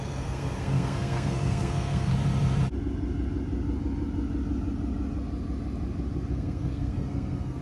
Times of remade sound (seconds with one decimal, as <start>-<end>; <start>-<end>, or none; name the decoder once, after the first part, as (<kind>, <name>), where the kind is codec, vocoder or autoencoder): 0.0-2.1 (codec, SNAC); 6.3-7.6